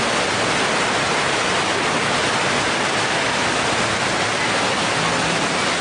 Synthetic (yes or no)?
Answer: no